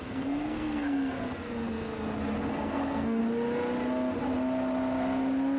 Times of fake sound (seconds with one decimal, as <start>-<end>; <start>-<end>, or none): 0.0-1.2; 2.5-3.2